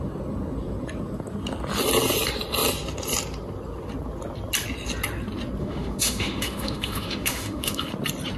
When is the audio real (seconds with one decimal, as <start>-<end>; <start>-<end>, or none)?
0.0-5.6; 7.9-8.4